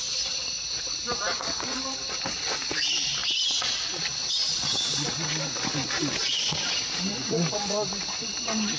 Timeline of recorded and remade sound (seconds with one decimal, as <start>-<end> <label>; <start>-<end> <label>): 0.0-8.8 recorded